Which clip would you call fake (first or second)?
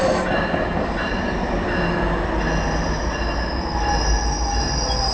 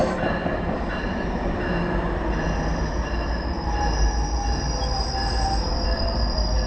second